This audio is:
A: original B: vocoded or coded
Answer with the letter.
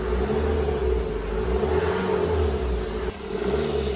A